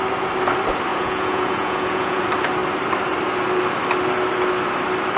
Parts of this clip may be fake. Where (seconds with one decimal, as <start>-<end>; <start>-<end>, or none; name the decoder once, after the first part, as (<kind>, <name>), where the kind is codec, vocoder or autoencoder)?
0.9-2.2 (vocoder, Vocos)